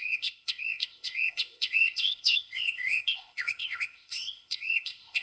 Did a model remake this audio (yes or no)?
yes